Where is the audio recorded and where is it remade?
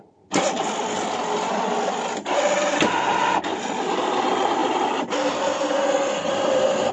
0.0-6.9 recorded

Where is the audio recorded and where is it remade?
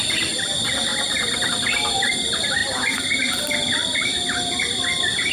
0.0-5.3 recorded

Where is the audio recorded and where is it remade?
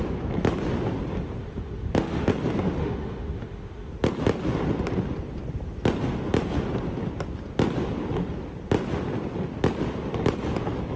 0.0-1.4 recorded; 1.4-2.3 remade; 2.3-2.8 recorded; 2.8-3.9 remade; 3.9-11.0 recorded